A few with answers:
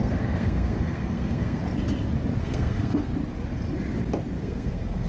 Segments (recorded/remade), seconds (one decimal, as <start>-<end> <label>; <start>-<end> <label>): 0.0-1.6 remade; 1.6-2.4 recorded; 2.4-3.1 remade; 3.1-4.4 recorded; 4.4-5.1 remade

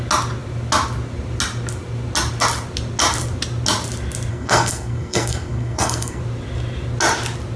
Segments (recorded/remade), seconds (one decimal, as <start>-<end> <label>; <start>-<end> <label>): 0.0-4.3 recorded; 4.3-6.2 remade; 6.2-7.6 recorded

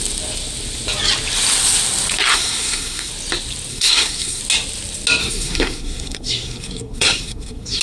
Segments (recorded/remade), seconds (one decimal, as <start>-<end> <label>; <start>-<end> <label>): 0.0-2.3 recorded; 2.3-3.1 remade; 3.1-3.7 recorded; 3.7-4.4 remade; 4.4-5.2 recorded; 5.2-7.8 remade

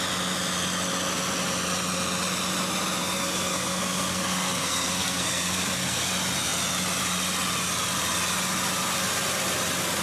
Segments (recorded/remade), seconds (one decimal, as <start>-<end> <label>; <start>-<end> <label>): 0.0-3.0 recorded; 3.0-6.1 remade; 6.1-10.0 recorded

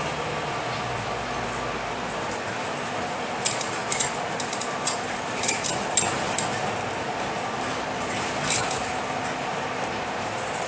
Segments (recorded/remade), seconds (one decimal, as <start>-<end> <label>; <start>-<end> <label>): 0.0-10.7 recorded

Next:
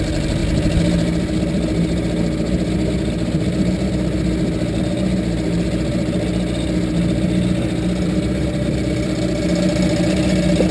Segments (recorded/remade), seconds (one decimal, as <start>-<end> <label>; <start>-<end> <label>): 0.0-10.7 recorded

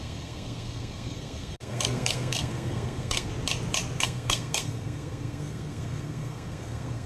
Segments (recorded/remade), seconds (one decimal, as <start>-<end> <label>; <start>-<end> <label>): 0.0-3.3 remade; 3.3-4.0 recorded; 4.0-7.1 remade

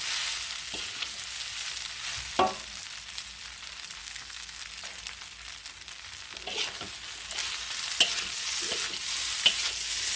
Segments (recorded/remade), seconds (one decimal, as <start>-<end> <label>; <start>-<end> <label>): 0.0-4.0 recorded; 4.0-4.6 remade; 4.6-10.2 recorded